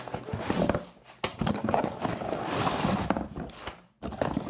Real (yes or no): yes